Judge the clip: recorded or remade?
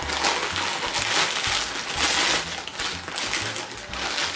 recorded